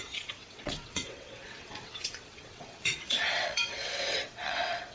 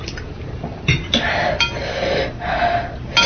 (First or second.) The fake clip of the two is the first